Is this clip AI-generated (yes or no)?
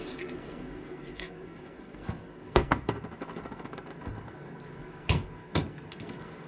yes